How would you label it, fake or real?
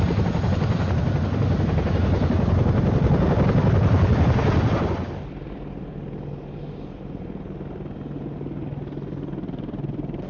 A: real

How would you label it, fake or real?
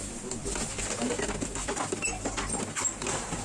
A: real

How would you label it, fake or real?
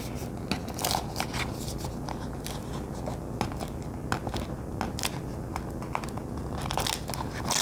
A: real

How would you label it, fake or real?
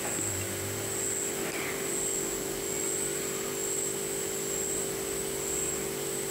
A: real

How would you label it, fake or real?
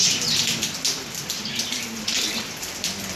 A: fake